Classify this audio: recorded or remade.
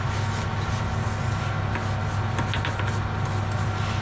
recorded